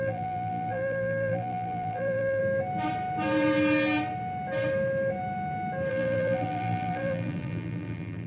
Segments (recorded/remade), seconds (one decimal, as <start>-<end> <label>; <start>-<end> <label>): 0.0-2.4 remade; 2.4-5.9 recorded; 5.9-8.3 remade